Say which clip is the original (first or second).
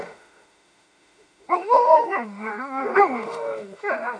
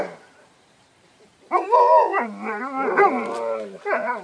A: second